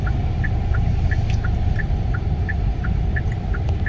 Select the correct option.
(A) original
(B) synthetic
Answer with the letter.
A